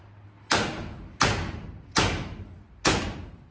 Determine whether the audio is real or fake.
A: real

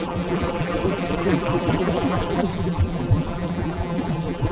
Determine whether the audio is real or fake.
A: fake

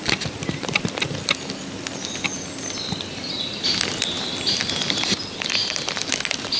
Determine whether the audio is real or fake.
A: real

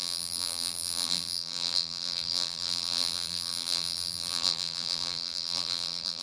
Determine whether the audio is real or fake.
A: fake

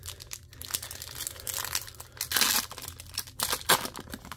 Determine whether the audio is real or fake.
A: real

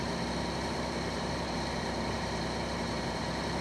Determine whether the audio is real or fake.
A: fake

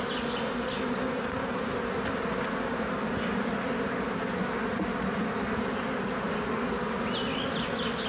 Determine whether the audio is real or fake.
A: real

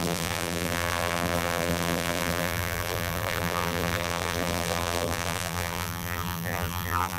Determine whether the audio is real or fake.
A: fake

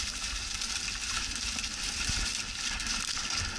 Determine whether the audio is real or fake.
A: real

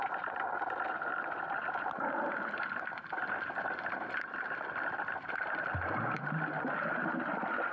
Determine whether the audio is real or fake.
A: real